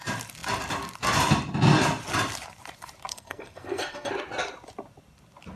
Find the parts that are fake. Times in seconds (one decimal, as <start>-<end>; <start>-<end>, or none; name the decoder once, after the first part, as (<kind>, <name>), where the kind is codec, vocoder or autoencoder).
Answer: 3.1-4.1 (codec, SNAC)